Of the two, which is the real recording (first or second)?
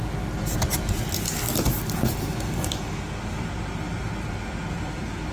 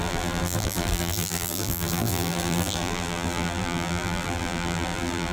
first